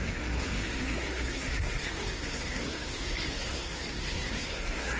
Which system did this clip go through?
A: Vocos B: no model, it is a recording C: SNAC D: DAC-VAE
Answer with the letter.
C